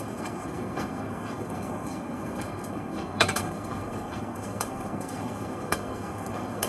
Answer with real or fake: fake